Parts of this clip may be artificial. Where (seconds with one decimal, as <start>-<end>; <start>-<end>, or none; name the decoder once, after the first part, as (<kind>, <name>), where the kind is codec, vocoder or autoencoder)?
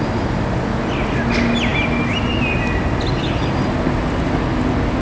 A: none